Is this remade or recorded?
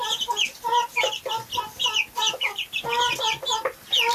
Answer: recorded